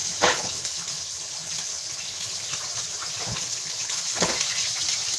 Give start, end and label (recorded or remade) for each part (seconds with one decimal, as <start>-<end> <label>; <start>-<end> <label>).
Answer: 0.0-2.4 remade; 2.4-3.3 recorded; 3.3-4.3 remade; 4.3-5.2 recorded